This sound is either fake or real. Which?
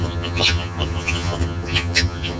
fake